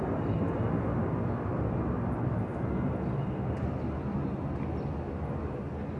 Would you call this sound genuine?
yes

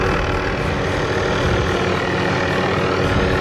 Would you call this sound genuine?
yes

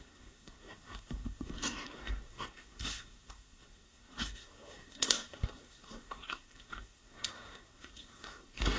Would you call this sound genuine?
no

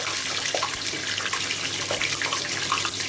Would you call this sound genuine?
yes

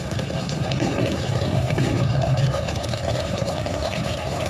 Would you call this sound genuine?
no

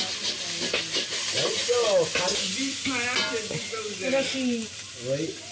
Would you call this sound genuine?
yes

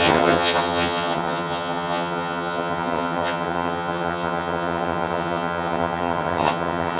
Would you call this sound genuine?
no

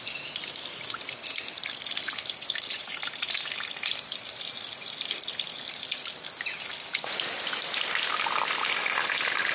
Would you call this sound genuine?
yes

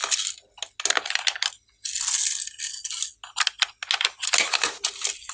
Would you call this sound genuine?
yes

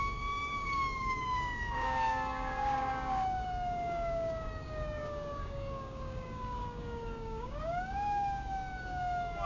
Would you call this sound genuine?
no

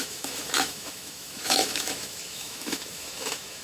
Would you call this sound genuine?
no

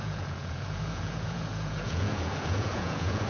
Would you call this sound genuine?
no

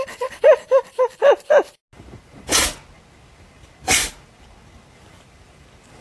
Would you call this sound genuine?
yes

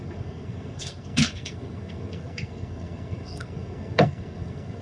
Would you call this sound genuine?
no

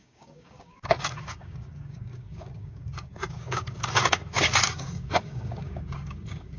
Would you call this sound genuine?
no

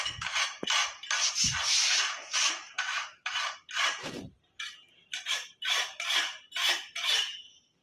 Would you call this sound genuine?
no